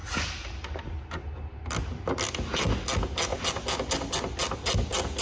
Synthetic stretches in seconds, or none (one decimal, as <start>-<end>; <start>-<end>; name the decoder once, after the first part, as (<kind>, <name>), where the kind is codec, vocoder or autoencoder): none